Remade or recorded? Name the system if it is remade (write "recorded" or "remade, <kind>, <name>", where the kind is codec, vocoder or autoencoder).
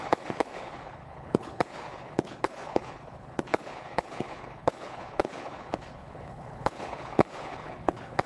remade, codec, HILCodec